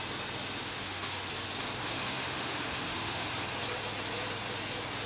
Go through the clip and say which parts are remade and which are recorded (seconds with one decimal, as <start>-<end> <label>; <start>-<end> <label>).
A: 0.0-0.6 recorded; 0.6-1.3 remade; 1.3-1.8 recorded; 1.8-3.3 remade; 3.3-5.1 recorded